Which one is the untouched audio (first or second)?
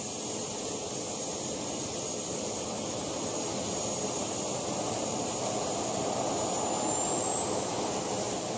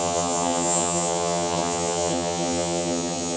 first